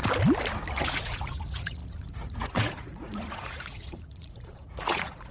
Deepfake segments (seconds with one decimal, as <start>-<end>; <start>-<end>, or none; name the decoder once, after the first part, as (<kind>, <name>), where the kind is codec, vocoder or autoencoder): 0.8-5.3 (vocoder, Vocos)